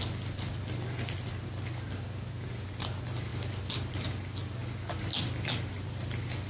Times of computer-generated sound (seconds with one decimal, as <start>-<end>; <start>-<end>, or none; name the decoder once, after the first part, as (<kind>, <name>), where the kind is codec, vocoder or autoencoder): none